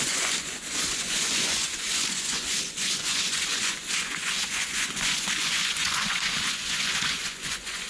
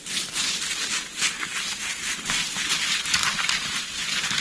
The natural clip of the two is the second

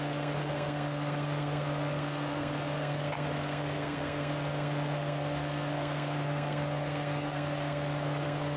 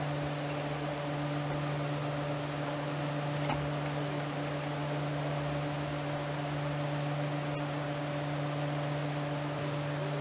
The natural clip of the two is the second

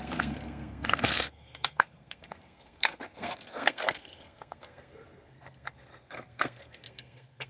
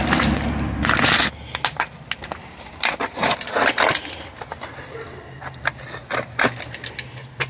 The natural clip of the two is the second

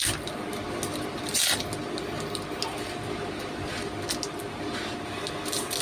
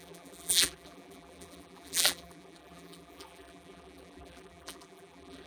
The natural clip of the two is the first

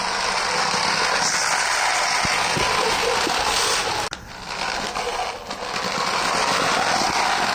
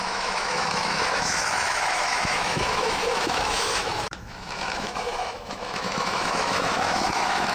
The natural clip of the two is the first